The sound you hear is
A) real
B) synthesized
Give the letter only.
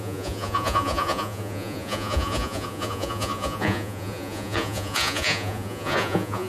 B